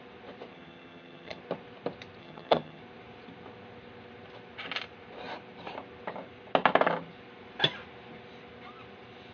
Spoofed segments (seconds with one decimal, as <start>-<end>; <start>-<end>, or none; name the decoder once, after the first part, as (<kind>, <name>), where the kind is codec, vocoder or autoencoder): 0.5-1.4 (vocoder, HiFi-GAN); 2.2-2.8